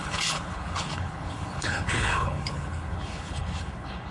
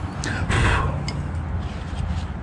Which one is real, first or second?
second